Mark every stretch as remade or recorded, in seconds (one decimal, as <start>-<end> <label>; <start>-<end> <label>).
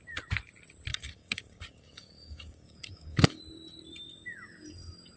0.0-0.9 recorded; 0.9-3.4 remade; 3.4-5.2 recorded